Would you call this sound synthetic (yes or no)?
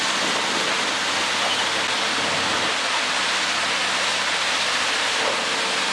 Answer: no